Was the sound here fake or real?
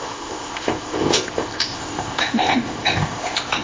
fake